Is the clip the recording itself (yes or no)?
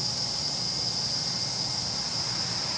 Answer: yes